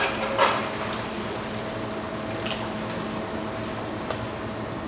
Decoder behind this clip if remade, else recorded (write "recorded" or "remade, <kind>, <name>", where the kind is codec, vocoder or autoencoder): recorded